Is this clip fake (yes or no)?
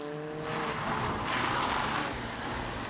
no